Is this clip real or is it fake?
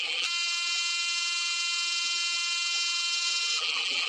fake